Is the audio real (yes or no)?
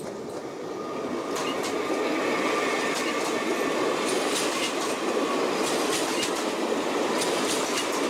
yes